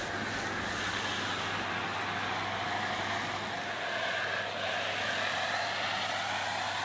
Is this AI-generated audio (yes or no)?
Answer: no